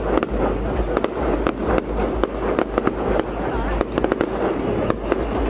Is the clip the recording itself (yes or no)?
yes